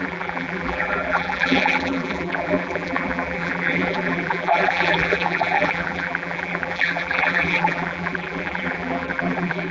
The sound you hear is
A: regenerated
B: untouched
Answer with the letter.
A